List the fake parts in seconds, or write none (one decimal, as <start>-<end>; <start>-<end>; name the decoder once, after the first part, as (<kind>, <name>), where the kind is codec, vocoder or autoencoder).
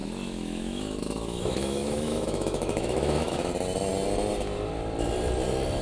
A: 0.0-3.5 (autoencoder, DAC-VAE)